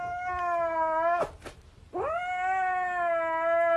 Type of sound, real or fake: real